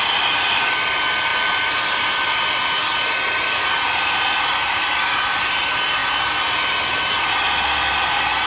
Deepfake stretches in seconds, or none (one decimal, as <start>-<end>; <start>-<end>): 1.3-5.1